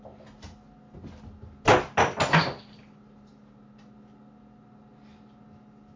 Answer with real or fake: real